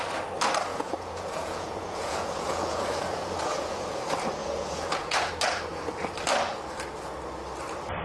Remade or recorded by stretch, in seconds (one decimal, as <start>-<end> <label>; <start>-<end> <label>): 0.0-0.7 recorded; 0.7-4.0 remade; 4.0-4.4 recorded; 4.4-5.3 remade; 5.3-8.0 recorded